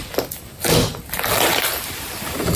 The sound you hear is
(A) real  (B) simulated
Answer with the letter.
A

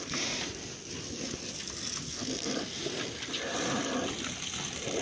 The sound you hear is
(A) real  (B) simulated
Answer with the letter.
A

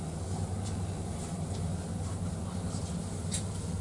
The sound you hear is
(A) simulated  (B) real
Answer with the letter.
B